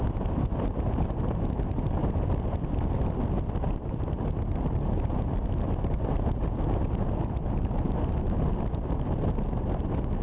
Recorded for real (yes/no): yes